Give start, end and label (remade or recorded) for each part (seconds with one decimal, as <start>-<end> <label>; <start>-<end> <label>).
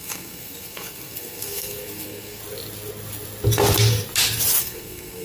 0.0-2.4 remade; 2.4-4.6 recorded; 4.6-5.2 remade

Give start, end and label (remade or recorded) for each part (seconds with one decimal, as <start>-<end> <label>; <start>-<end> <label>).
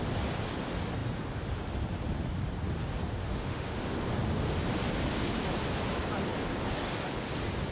0.0-3.2 recorded; 3.2-3.8 remade; 3.8-7.7 recorded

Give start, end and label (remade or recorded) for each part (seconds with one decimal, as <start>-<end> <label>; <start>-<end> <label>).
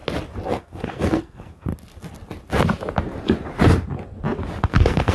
0.0-0.5 recorded; 0.5-1.7 remade; 1.7-4.6 recorded; 4.6-5.1 remade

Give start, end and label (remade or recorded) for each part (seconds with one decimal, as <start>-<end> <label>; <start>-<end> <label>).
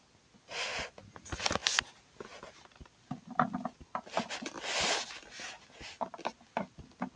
0.0-7.2 recorded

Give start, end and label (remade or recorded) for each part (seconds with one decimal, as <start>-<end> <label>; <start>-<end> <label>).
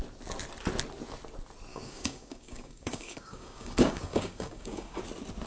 0.0-1.7 recorded; 1.7-5.0 remade; 5.0-5.5 recorded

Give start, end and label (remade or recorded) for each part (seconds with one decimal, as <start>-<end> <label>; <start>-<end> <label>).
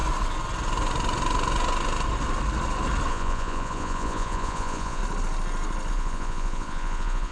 0.0-3.1 recorded; 3.1-5.0 remade; 5.0-5.9 recorded; 5.9-7.3 remade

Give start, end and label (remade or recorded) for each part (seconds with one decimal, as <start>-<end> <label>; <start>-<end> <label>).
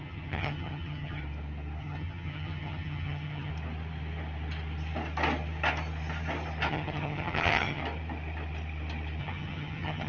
0.0-1.2 remade; 1.2-1.8 recorded; 1.8-3.5 remade; 3.5-6.7 recorded; 6.7-7.8 remade; 7.8-9.2 recorded; 9.2-10.1 remade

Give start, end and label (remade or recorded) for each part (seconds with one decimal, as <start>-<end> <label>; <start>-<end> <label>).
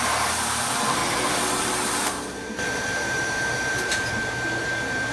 0.0-5.1 remade